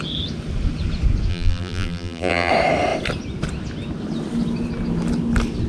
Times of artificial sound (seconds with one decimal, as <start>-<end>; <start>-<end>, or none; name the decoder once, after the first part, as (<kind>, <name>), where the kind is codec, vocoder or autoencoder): 1.3-2.5 (vocoder, BigVGAN v2)

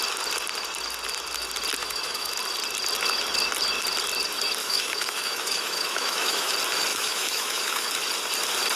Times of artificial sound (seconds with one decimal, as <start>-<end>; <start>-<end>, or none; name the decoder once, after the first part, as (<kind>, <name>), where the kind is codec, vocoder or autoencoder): 1.8-2.3 (autoencoder, DAC-VAE); 4.6-6.5; 6.9-7.9